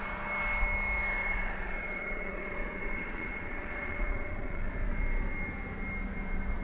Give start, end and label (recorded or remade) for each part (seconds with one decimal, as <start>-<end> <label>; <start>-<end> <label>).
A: 0.0-1.2 recorded; 1.2-4.7 remade; 4.7-6.6 recorded